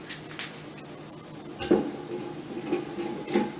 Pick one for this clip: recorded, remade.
recorded